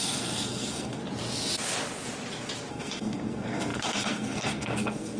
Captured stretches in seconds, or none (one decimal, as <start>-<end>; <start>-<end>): 1.0-2.7